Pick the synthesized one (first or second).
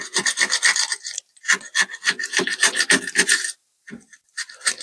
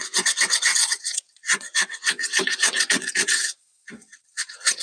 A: second